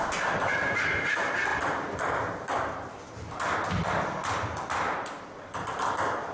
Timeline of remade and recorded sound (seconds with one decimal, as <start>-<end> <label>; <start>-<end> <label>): 0.0-6.3 remade